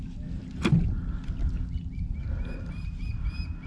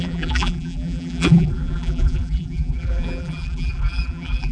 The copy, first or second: second